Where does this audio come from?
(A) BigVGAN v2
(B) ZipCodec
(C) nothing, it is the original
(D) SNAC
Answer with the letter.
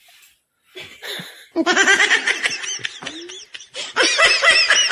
C